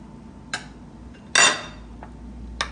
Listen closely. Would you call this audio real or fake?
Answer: real